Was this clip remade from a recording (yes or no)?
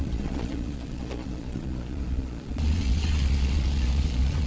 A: yes